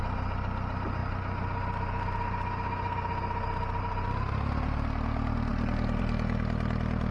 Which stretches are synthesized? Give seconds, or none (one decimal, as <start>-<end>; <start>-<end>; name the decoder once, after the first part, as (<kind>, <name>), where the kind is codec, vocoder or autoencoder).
none